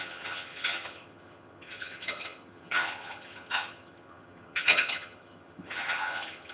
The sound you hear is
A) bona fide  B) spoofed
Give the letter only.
B